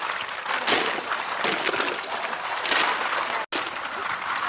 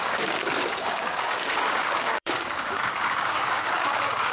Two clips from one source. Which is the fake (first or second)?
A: second